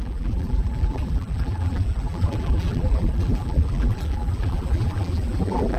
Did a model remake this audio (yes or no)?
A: yes